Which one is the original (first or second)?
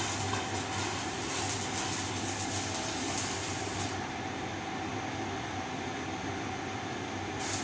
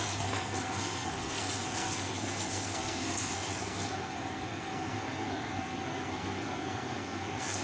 first